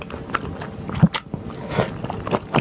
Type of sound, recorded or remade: recorded